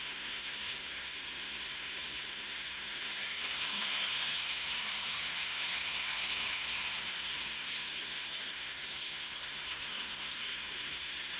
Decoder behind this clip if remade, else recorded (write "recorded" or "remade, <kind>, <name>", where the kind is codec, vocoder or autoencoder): remade, codec, SNAC